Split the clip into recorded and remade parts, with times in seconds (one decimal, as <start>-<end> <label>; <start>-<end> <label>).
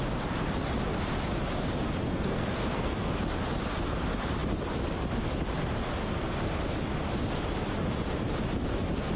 0.0-2.1 recorded; 2.1-3.1 remade; 3.1-9.2 recorded